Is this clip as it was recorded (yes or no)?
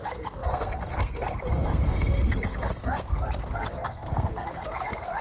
no